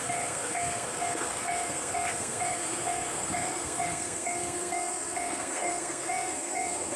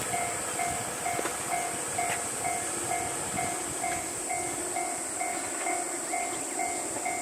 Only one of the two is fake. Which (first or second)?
first